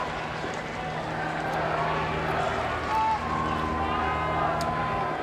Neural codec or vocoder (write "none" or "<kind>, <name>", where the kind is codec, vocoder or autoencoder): none